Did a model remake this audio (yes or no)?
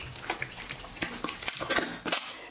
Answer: no